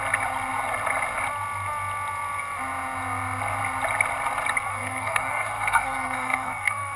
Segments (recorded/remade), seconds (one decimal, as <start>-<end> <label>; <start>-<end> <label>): 0.0-4.7 recorded; 4.7-7.0 remade